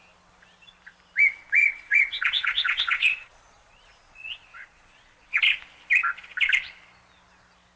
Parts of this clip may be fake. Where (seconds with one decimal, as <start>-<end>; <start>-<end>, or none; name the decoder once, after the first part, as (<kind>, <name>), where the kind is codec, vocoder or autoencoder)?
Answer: 1.6-5.4 (vocoder, Vocos)